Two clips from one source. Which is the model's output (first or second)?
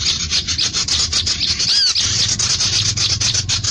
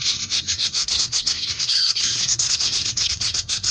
second